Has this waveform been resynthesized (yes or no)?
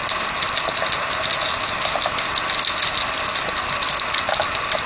no